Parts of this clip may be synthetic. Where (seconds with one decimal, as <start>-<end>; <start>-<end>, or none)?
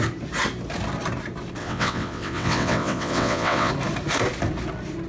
1.6-3.7